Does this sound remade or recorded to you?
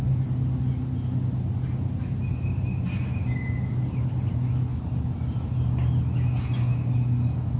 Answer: recorded